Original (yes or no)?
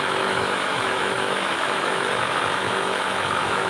no